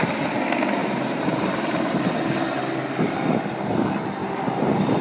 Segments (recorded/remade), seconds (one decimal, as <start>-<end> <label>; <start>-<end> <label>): 0.0-0.8 recorded; 0.8-2.0 remade; 2.0-4.2 recorded; 4.2-5.0 remade